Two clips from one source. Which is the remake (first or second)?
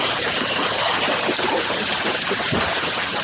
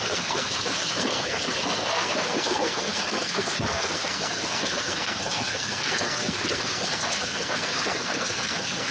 second